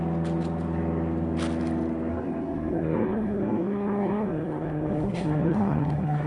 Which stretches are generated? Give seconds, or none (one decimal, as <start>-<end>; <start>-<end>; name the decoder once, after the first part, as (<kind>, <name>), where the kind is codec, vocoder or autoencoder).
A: 2.1-6.3 (codec, SNAC)